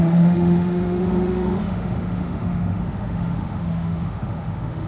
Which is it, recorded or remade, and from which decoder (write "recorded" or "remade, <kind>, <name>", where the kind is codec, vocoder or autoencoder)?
remade, autoencoder, DAC-VAE